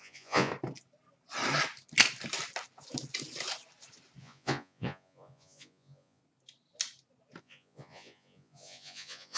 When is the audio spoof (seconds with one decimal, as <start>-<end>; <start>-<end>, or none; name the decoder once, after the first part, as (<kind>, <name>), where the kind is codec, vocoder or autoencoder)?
0.0-0.5 (vocoder, Vocos); 4.2-6.2; 7.4-9.4